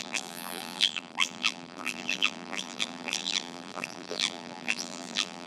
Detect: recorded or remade remade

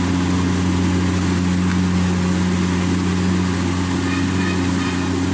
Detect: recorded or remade recorded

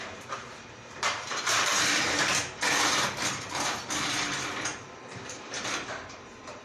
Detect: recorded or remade remade